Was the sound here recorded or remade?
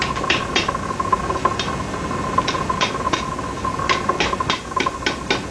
recorded